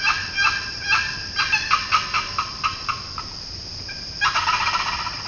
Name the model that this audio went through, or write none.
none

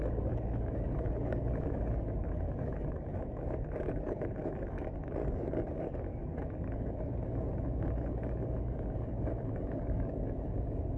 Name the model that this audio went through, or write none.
codec, DAC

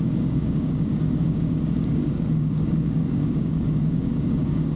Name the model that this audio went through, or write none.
codec, DAC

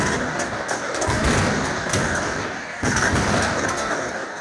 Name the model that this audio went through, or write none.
codec, DAC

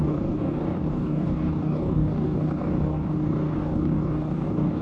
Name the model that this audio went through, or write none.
codec, DAC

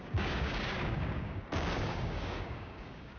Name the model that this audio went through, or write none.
codec, DAC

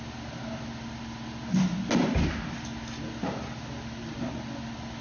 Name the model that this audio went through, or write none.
none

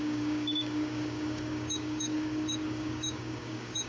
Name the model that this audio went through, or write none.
codec, DAC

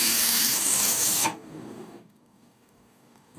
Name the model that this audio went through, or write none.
codec, DAC